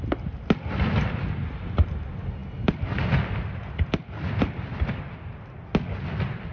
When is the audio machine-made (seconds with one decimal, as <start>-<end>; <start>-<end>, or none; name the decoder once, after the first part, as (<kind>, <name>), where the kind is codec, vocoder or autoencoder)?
none